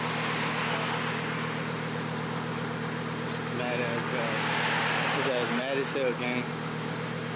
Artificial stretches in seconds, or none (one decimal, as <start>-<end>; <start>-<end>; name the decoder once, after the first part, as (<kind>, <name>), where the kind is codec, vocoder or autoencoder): none